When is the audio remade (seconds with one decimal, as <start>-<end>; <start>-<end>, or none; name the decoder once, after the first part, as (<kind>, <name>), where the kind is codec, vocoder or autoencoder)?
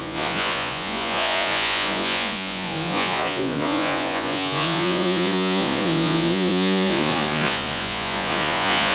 0.0-8.9 (vocoder, Vocos)